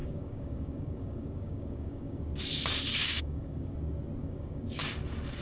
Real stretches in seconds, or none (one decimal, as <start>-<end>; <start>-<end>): 2.2-3.0; 3.7-4.2; 4.8-5.4